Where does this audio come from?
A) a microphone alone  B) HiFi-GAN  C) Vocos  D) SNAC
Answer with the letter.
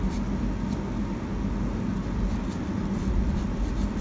A